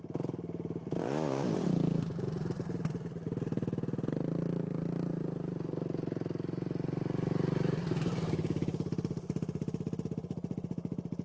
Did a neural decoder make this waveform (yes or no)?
no